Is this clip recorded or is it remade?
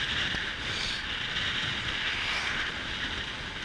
recorded